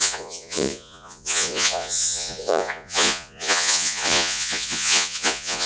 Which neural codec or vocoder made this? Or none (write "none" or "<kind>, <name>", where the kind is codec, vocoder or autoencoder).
vocoder, Vocos